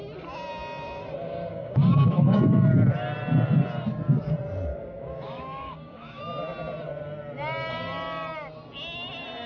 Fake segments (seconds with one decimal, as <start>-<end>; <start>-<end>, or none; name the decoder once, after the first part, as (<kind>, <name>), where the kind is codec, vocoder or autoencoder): 1.5-2.7 (codec, DAC); 4.7-6.2